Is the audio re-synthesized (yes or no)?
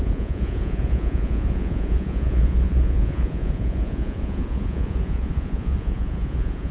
yes